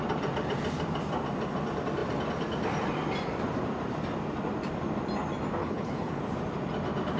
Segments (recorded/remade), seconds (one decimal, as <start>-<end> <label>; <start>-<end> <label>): 0.0-5.6 recorded; 5.6-6.2 remade; 6.2-7.2 recorded